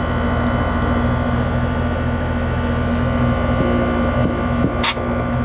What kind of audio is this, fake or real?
real